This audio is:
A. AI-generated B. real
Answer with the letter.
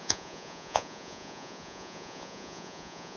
A